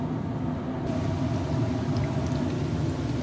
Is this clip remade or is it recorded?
recorded